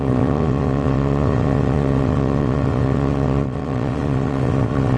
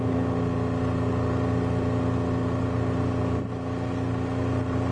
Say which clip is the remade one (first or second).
first